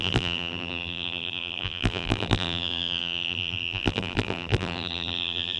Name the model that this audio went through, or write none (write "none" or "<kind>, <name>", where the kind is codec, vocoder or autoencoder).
vocoder, BigVGAN v2